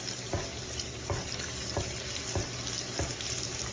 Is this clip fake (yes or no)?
no